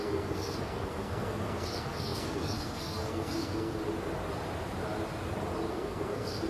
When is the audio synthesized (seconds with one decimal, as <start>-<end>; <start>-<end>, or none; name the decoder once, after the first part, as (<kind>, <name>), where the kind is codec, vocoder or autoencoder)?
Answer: 0.0-3.8 (codec, SNAC); 5.7-6.5

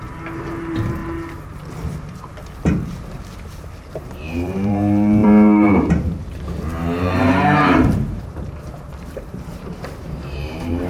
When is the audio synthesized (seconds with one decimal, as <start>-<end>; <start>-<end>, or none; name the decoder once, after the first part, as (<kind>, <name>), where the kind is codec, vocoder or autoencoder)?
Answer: 0.0-1.0 (vocoder, BigVGAN v2); 3.8-10.9